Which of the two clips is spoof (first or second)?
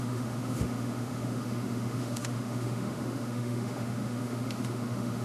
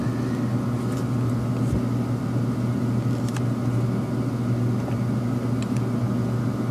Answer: first